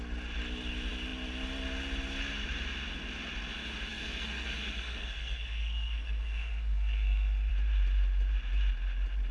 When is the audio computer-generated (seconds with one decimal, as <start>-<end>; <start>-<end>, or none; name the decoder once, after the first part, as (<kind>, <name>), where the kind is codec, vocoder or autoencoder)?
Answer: 3.9-7.5 (codec, SNAC)